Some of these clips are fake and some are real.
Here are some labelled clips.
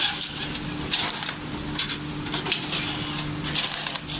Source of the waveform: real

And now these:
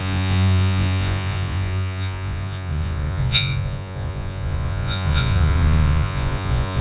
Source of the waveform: fake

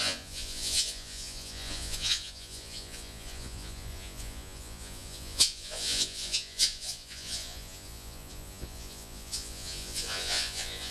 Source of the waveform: fake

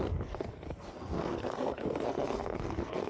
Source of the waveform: fake